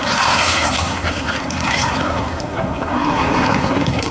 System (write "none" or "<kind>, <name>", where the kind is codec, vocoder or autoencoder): codec, SNAC